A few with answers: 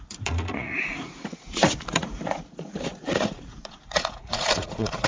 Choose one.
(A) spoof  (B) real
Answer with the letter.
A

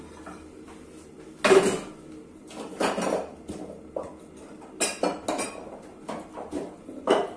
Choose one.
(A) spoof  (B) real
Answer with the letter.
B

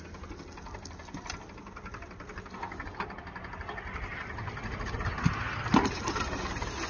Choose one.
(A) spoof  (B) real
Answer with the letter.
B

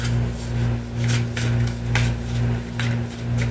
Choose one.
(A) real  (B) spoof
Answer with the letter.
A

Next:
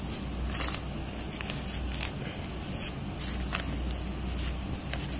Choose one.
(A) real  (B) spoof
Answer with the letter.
A